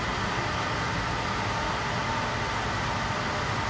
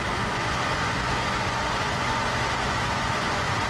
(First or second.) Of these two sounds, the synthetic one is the second